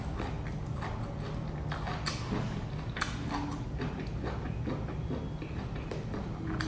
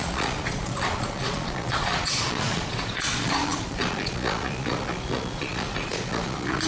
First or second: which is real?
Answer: first